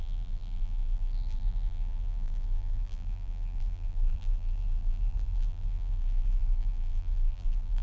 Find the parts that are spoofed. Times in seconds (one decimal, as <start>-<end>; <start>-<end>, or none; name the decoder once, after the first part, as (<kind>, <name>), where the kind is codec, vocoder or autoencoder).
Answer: 0.0-7.8 (vocoder, BigVGAN v2)